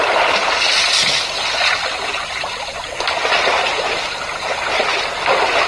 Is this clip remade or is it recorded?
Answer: recorded